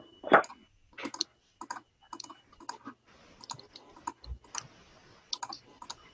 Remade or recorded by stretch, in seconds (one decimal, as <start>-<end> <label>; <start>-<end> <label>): 0.0-6.1 recorded